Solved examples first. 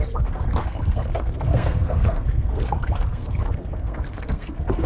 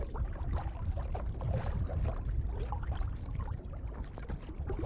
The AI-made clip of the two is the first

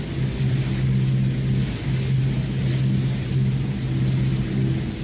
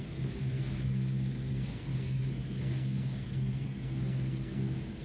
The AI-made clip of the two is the second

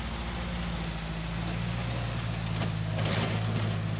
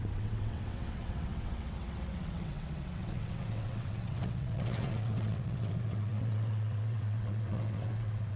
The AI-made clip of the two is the second